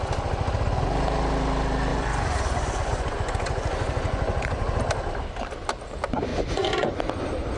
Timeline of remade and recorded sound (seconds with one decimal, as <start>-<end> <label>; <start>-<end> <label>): 0.0-1.9 recorded; 1.9-4.8 remade; 4.8-6.3 recorded; 6.3-6.9 remade; 6.9-7.6 recorded